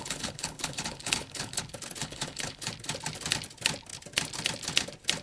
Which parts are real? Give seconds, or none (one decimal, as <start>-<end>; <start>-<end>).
1.6-2.0; 2.7-5.2